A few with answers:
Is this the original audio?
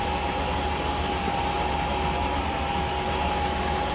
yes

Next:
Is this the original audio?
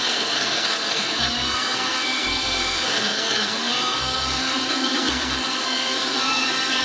no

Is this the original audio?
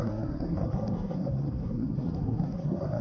no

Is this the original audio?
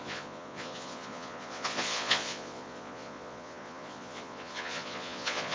no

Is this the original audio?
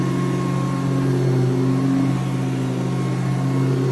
yes